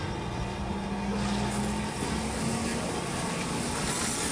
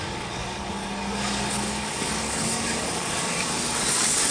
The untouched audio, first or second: first